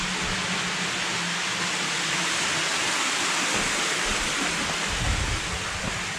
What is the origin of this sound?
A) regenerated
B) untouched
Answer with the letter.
B